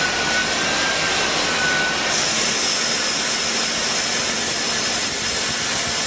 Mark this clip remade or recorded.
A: recorded